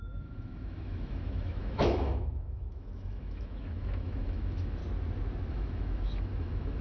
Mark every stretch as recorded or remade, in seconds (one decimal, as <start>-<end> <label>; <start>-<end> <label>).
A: 0.0-4.8 remade; 4.8-5.5 recorded; 5.5-6.8 remade